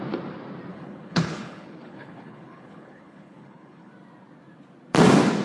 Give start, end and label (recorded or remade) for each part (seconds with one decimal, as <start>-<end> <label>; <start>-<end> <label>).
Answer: 0.0-0.7 recorded; 0.7-3.9 remade; 3.9-5.4 recorded